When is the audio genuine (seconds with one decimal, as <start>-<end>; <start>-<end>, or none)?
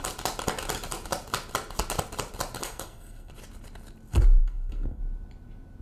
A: 0.0-2.6; 3.3-4.4; 5.0-5.8